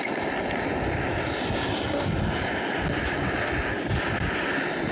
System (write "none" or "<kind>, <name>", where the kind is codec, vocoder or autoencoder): none